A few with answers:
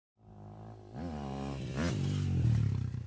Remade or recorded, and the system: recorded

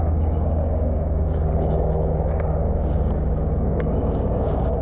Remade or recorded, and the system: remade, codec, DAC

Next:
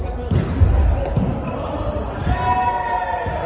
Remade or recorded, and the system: recorded